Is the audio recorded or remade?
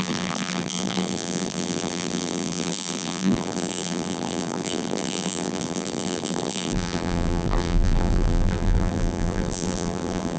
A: remade